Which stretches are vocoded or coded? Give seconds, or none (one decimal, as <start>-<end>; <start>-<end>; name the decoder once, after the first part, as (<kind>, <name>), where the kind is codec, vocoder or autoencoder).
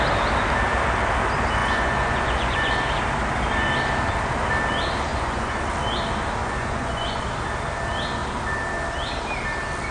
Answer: 1.6-2.7 (vocoder, Vocos); 5.1-5.6; 6.4-7.2